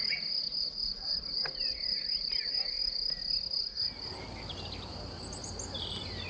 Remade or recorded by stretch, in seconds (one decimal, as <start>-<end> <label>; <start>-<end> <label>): 0.0-6.3 recorded